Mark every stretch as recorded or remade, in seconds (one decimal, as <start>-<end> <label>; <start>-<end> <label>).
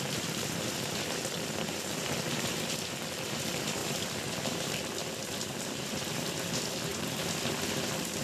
0.0-6.9 remade; 6.9-8.2 recorded